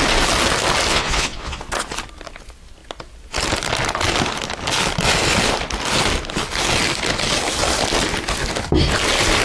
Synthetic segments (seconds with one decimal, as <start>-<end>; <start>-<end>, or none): 0.9-1.6